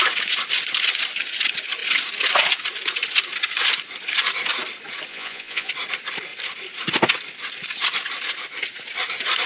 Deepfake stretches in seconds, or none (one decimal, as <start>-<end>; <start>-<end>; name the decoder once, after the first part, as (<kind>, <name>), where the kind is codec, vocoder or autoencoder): 5.1-5.7 (vocoder, Vocos)